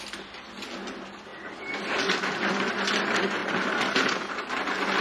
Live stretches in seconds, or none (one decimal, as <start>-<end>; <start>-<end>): 0.0-3.4; 4.5-5.0